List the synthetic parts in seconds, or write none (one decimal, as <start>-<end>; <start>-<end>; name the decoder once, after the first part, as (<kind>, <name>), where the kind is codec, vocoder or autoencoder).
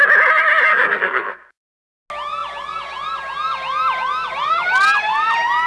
0.7-1.7 (codec, SNAC)